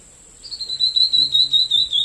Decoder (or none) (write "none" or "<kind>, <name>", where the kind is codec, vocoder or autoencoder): none